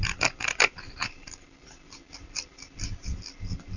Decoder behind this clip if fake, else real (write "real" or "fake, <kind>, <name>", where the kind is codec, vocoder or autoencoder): real